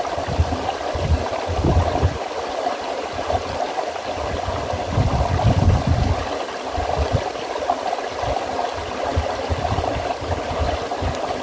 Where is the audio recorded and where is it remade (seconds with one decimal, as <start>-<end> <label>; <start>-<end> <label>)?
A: 0.0-11.4 recorded